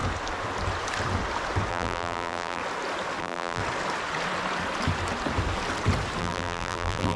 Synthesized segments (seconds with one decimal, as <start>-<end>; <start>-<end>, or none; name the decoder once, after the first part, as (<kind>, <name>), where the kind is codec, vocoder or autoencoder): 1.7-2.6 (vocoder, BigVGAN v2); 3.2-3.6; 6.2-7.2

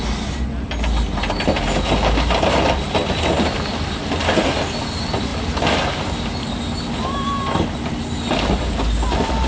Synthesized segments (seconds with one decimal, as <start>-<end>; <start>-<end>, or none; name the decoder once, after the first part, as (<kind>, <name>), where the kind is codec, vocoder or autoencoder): none

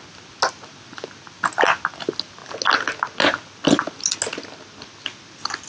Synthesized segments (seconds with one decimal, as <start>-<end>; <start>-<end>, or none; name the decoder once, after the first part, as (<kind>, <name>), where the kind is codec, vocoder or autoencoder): none